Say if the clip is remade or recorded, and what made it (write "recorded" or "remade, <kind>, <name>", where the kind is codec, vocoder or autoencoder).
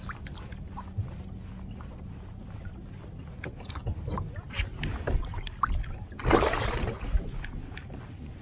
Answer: recorded